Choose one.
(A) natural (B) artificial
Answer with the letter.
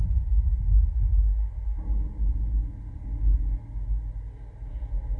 A